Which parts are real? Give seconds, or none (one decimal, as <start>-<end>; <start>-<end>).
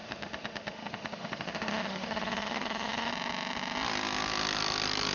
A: 3.1-5.1